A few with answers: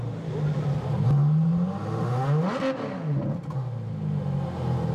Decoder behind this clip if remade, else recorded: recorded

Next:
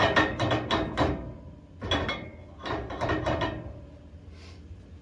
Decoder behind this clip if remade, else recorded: recorded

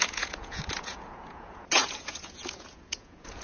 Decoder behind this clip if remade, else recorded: remade, vocoder, Vocos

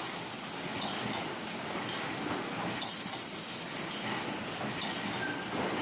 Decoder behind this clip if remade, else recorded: recorded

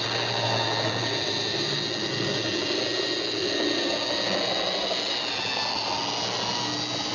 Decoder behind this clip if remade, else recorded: recorded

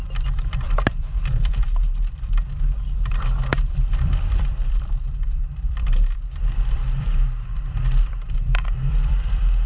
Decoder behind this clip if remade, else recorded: remade, vocoder, BigVGAN v2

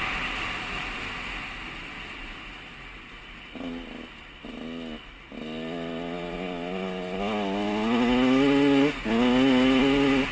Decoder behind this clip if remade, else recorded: recorded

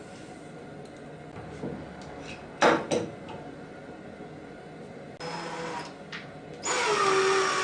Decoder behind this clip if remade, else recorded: recorded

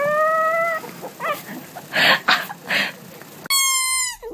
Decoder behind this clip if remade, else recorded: recorded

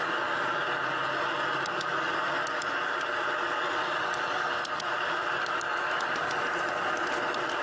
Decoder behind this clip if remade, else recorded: recorded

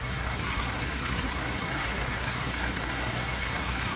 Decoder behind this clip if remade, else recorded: remade, codec, SNAC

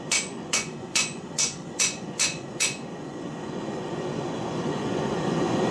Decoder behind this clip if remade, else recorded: remade, vocoder, Vocos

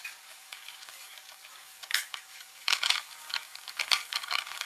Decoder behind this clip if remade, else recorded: remade, codec, DAC